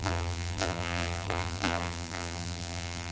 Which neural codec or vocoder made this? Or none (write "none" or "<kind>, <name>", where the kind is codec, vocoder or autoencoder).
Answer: vocoder, BigVGAN v2